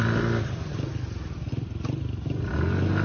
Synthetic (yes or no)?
no